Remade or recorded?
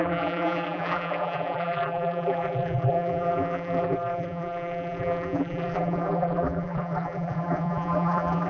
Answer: remade